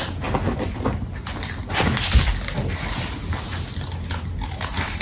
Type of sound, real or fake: real